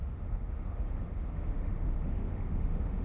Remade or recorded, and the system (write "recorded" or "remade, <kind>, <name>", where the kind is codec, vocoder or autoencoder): remade, autoencoder, DAC-VAE